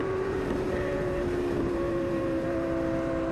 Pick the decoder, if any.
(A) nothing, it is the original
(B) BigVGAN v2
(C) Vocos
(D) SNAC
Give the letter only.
B